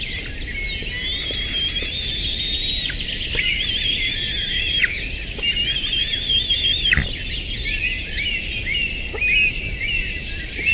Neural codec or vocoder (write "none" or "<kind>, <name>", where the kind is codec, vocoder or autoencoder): none